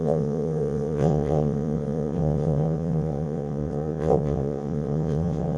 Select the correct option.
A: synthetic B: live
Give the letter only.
A